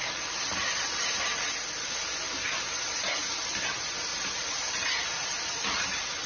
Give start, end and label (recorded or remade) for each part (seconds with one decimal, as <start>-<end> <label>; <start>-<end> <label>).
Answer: 0.0-6.3 recorded